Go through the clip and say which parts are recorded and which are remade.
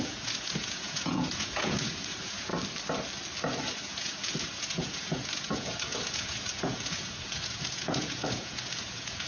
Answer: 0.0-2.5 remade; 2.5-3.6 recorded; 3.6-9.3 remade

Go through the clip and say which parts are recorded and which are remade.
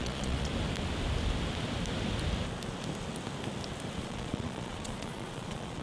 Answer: 0.0-0.5 remade; 0.5-4.0 recorded; 4.0-5.8 remade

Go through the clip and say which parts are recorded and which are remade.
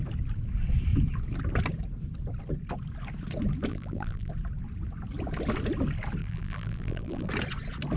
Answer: 0.0-3.7 recorded; 3.7-4.3 remade; 4.3-6.2 recorded; 6.2-7.3 remade; 7.3-8.0 recorded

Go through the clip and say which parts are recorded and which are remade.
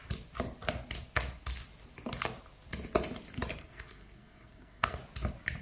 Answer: 0.0-3.6 recorded; 3.6-5.0 remade; 5.0-5.6 recorded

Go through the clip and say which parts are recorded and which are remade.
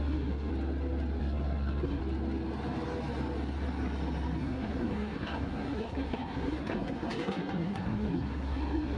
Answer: 0.0-0.5 remade; 0.5-1.2 recorded; 1.2-2.0 remade; 2.0-4.4 recorded; 4.4-9.0 remade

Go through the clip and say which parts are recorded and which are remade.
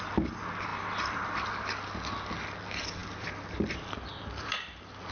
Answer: 0.0-0.7 recorded; 0.7-1.5 remade; 1.5-3.0 recorded; 3.0-5.1 remade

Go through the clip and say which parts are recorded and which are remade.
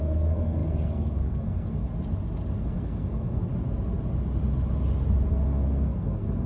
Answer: 0.0-1.9 remade; 1.9-2.6 recorded; 2.6-3.5 remade; 3.5-5.3 recorded; 5.3-6.5 remade